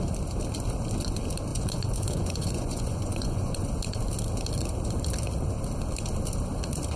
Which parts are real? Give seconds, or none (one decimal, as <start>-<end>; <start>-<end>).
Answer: 0.0-1.5; 3.7-7.0